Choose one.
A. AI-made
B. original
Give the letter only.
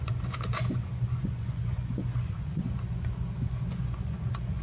A